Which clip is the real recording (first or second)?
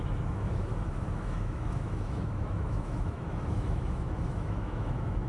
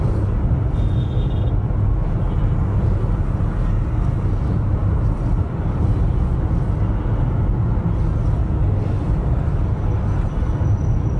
second